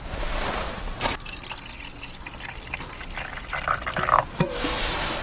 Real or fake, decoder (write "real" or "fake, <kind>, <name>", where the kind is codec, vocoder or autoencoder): real